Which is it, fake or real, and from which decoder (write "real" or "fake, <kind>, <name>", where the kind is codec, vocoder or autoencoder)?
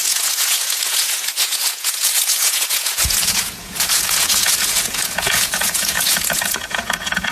fake, vocoder, Vocos